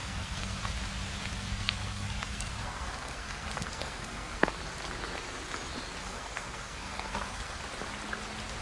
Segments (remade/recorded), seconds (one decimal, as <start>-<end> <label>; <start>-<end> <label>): 0.0-0.7 remade; 0.7-1.3 recorded; 1.3-4.6 remade; 4.6-6.0 recorded; 6.0-7.6 remade; 7.6-8.6 recorded